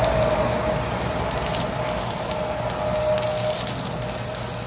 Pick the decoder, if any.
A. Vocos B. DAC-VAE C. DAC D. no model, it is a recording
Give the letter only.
D